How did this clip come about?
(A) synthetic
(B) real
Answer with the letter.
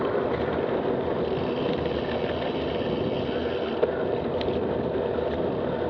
B